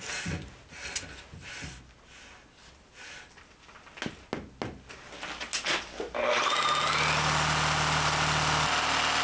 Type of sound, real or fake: real